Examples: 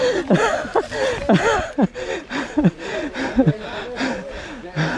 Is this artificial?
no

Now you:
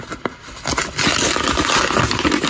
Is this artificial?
no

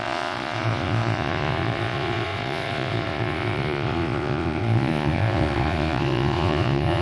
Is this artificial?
yes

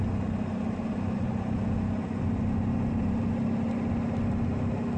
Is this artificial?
no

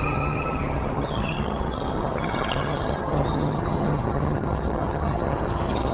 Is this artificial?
yes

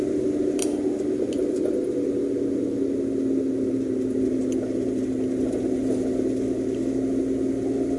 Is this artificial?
no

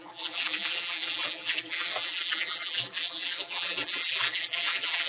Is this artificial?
yes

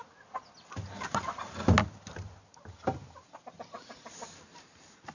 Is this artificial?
no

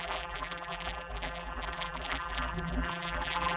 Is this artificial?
yes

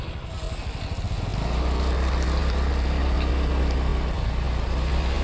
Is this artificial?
no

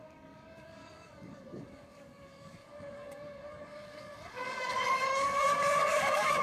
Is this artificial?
yes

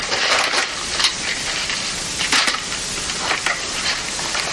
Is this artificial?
no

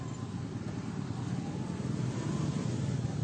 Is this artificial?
no